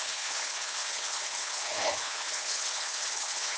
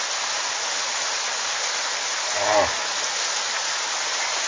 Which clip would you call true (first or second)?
second